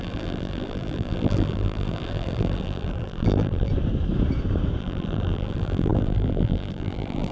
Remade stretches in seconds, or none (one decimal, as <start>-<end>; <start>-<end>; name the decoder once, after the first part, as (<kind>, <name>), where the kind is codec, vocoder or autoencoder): 0.0-3.7 (vocoder, BigVGAN v2); 4.8-7.3